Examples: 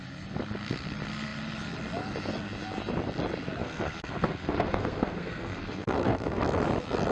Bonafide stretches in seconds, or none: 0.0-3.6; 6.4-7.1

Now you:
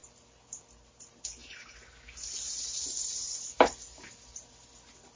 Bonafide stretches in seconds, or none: 0.0-5.2

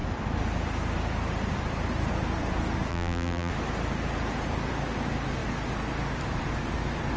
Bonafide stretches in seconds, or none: 0.0-2.9; 3.5-7.2

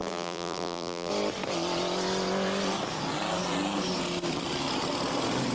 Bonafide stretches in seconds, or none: 1.1-5.5

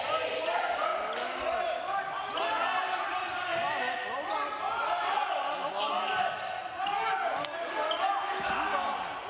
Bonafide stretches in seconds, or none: 0.0-9.3

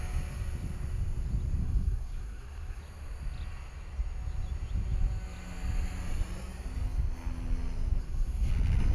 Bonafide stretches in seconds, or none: 0.0-1.6; 2.8-8.0; 8.5-8.9